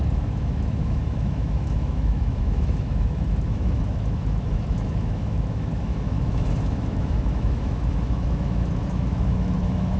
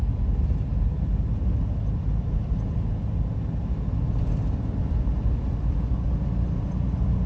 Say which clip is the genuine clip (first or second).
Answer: second